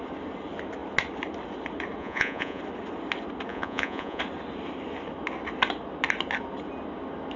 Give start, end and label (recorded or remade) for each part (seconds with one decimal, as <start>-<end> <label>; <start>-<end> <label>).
0.0-2.0 recorded; 2.0-2.6 remade; 2.6-3.5 recorded; 3.5-4.2 remade; 4.2-7.4 recorded